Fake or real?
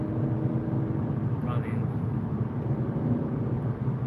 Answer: real